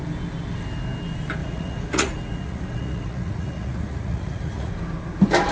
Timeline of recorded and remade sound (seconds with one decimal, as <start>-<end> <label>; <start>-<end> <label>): 0.0-1.4 recorded; 1.4-4.7 remade; 4.7-5.5 recorded